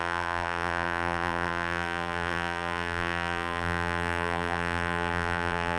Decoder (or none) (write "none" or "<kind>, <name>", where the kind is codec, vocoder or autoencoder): vocoder, BigVGAN v2